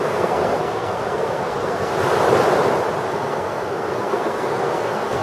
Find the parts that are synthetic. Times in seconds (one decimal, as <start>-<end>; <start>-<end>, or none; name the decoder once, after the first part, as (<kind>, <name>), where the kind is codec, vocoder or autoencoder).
0.0-1.9 (codec, SNAC); 3.1-5.2